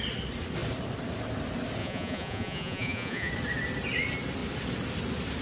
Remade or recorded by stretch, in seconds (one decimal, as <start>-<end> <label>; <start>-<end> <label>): 0.0-1.8 recorded; 1.8-3.3 remade; 3.3-5.4 recorded